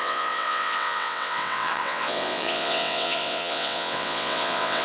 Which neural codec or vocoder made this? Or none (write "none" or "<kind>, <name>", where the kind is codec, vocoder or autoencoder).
vocoder, WaveNeXt